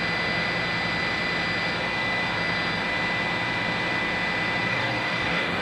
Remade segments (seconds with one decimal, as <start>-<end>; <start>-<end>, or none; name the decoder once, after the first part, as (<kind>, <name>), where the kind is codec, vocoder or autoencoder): 4.7-5.6 (codec, DAC)